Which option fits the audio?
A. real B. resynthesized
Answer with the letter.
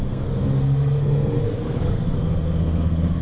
B